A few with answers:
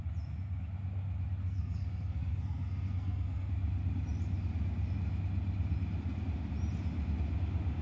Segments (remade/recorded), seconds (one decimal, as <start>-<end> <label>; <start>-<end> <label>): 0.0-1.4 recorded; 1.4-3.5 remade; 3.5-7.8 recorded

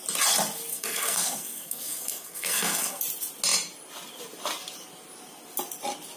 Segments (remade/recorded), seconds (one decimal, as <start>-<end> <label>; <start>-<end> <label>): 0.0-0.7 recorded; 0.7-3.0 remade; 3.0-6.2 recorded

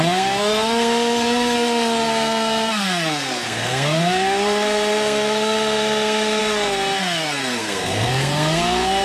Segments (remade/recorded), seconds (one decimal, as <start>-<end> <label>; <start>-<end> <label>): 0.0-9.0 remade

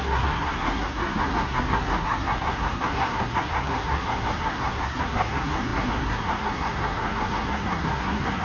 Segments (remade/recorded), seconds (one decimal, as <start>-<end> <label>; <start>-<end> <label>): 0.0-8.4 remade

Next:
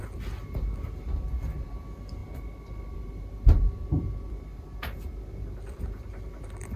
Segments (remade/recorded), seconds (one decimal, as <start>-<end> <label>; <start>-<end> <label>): 0.0-6.8 recorded